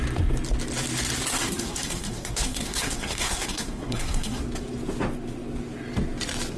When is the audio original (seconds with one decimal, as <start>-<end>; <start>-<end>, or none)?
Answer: 0.0-1.3; 4.4-6.6